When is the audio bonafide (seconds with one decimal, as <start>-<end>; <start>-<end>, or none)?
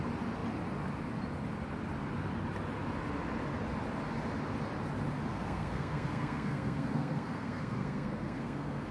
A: 0.0-5.3